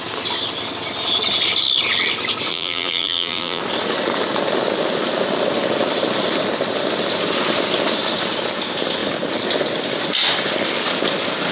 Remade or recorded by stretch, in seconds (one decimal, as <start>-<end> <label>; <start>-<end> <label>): 0.0-2.5 recorded; 2.5-3.6 remade; 3.6-11.5 recorded